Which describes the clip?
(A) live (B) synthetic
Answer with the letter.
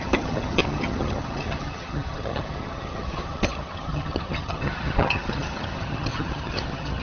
B